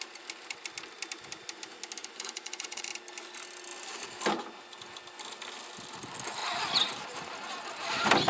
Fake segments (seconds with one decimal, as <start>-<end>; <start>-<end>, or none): 2.0-2.9